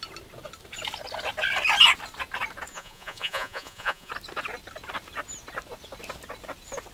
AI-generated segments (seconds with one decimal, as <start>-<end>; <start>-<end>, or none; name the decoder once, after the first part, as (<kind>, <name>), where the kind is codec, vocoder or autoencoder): 2.7-4.1 (vocoder, Vocos)